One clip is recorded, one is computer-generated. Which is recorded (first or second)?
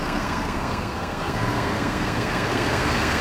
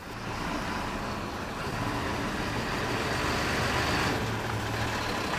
second